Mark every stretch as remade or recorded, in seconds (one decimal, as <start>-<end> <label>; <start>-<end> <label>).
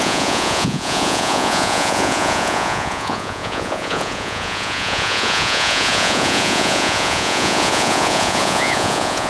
0.0-9.3 remade